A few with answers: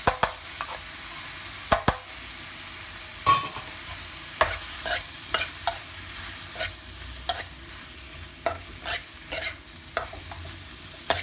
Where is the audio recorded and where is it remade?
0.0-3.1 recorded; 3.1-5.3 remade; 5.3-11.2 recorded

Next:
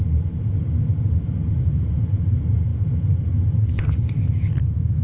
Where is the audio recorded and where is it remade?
0.0-0.5 remade; 0.5-1.0 recorded; 1.0-5.0 remade

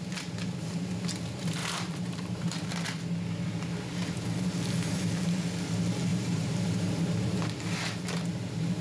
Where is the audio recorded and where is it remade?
0.0-1.6 recorded; 1.6-3.0 remade; 3.0-6.1 recorded; 6.1-6.9 remade; 6.9-8.8 recorded

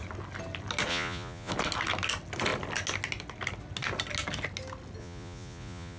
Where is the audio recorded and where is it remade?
0.0-0.9 recorded; 0.9-1.5 remade; 1.5-5.0 recorded; 5.0-6.0 remade

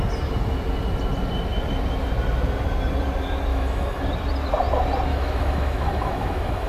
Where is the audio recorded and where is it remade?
0.0-3.5 recorded; 3.5-4.0 remade; 4.0-5.1 recorded; 5.1-6.7 remade

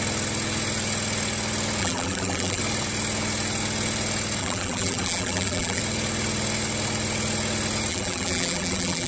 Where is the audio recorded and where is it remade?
0.0-1.8 recorded; 1.8-2.6 remade; 2.6-4.4 recorded; 4.4-5.8 remade; 5.8-7.9 recorded; 7.9-9.1 remade

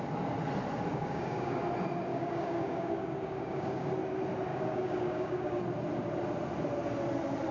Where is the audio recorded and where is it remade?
0.0-0.9 recorded; 0.9-1.6 remade; 1.6-2.1 recorded; 2.1-3.9 remade; 3.9-4.5 recorded; 4.5-5.6 remade; 5.6-7.5 recorded